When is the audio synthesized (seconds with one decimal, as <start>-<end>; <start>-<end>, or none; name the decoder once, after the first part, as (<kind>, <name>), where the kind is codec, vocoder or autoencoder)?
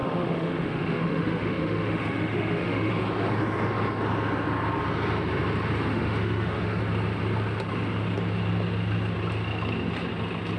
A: 0.0-2.9 (autoencoder, DAC-VAE); 5.9-6.8